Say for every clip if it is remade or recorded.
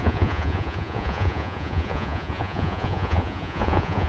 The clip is remade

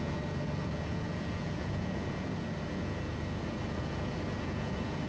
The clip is remade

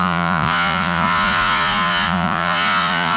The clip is remade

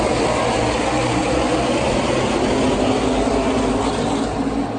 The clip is recorded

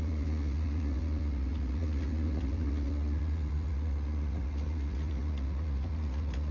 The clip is remade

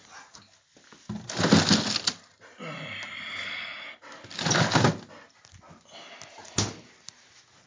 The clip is recorded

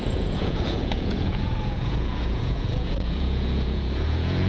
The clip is remade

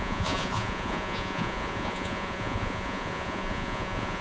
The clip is remade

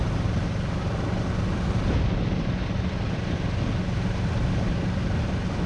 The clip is recorded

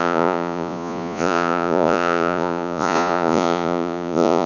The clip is remade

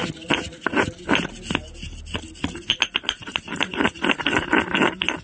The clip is recorded